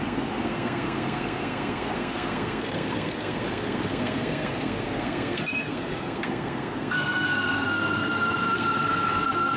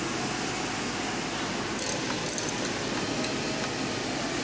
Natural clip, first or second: second